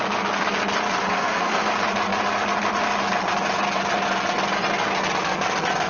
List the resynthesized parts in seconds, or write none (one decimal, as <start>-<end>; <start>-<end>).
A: 1.0-1.7